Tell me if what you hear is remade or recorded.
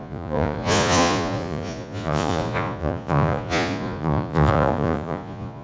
remade